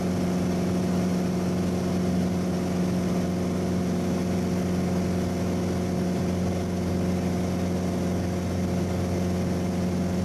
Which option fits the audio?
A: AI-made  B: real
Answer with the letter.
B